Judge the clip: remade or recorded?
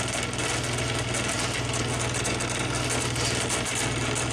recorded